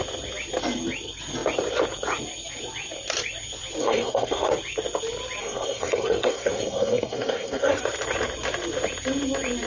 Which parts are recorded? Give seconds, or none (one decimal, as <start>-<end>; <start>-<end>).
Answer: 0.0-3.8; 4.5-5.4; 7.8-9.7